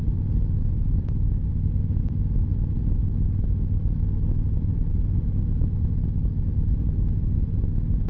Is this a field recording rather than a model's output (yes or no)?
yes